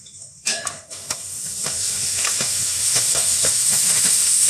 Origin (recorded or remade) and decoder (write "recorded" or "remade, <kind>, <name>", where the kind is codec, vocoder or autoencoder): remade, autoencoder, DAC-VAE